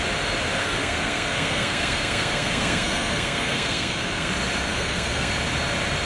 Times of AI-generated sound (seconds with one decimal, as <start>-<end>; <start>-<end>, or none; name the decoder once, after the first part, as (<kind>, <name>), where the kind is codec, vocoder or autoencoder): 0.6-4.3 (codec, SNAC); 4.7-5.3